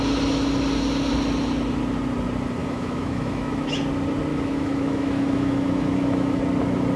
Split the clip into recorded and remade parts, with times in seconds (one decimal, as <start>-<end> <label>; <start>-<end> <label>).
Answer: 0.0-2.6 recorded; 2.6-3.8 remade; 3.8-4.3 recorded; 4.3-6.4 remade; 6.4-7.0 recorded

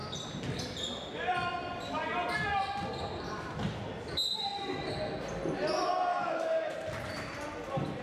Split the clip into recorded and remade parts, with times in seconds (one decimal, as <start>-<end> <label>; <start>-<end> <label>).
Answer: 0.0-6.1 recorded; 6.1-6.7 remade; 6.7-8.0 recorded

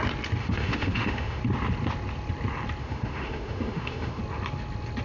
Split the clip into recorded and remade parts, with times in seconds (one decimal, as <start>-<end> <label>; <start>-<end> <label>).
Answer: 0.0-0.4 recorded; 0.4-1.4 remade; 1.4-2.8 recorded; 2.8-4.2 remade; 4.2-5.0 recorded

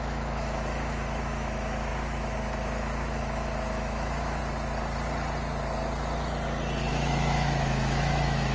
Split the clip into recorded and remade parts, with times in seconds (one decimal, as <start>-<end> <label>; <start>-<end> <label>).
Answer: 0.0-4.4 remade; 4.4-6.9 recorded; 6.9-8.5 remade

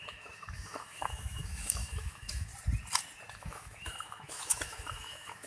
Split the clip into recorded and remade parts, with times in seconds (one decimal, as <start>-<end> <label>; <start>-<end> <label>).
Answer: 0.0-2.5 remade; 2.5-3.3 recorded; 3.3-5.5 remade

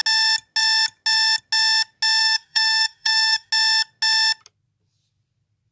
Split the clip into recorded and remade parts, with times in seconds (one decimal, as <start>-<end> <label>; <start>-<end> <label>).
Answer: 0.0-2.2 recorded; 2.2-3.5 remade; 3.5-5.7 recorded

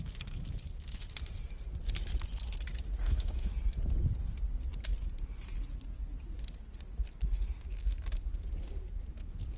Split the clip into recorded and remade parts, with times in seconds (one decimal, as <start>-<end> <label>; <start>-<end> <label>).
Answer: 0.0-3.0 recorded; 3.0-3.5 remade; 3.5-9.6 recorded